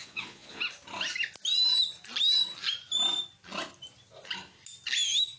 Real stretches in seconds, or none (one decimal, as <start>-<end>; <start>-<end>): 0.6-5.4